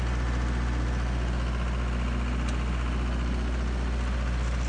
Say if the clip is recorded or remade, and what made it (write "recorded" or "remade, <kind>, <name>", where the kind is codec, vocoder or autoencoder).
recorded